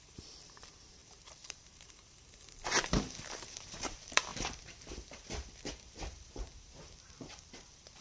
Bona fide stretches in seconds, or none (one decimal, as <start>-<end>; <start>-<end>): none